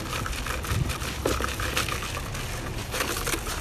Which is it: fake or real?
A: fake